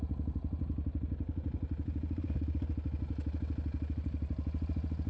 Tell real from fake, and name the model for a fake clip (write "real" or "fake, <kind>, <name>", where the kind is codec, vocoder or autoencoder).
real